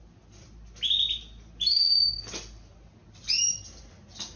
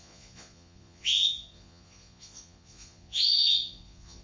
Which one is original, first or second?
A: first